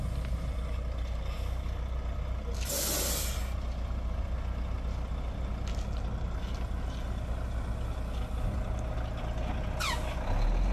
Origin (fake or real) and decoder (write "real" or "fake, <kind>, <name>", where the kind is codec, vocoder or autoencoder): real